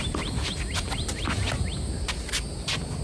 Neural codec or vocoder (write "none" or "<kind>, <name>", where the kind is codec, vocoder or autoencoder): none